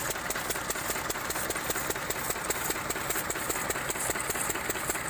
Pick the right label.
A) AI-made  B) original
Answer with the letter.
B